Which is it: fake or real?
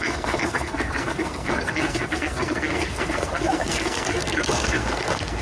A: fake